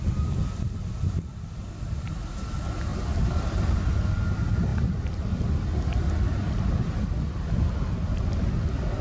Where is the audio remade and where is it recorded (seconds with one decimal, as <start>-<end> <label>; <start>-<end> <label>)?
0.0-9.0 recorded